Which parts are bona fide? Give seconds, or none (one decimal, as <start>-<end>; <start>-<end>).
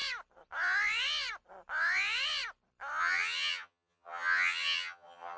0.0-3.0